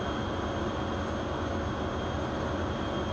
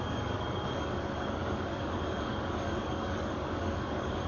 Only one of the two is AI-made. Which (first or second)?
second